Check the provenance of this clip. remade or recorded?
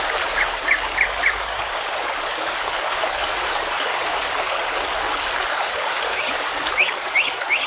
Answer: remade